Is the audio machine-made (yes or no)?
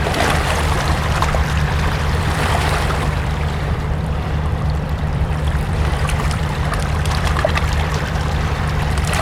yes